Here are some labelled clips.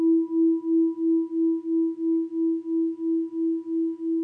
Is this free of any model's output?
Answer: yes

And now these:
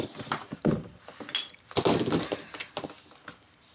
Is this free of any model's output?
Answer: yes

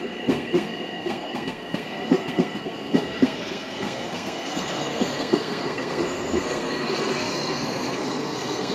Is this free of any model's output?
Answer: no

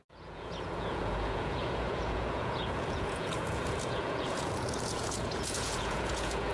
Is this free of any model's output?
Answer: no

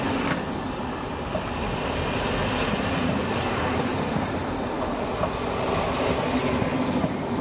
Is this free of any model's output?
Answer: yes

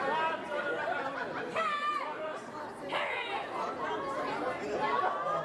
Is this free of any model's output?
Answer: yes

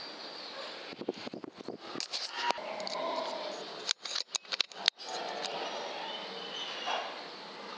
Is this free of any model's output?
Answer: yes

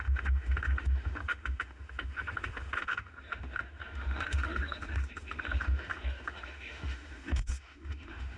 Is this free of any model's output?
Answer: no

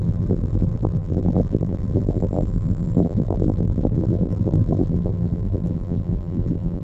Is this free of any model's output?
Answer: no